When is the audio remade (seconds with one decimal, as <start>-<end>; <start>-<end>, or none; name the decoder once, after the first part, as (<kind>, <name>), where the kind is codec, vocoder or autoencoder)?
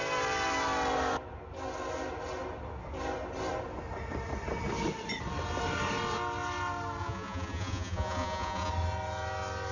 7.0-8.7 (vocoder, Vocos)